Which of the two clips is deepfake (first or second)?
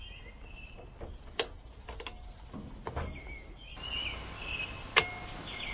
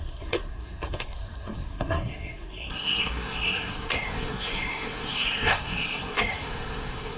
second